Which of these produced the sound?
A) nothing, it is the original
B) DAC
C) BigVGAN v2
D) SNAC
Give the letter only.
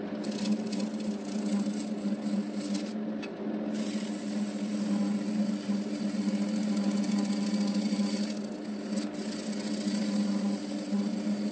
A